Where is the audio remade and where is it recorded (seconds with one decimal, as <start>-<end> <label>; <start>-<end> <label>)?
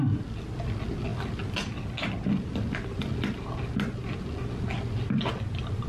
0.0-5.9 recorded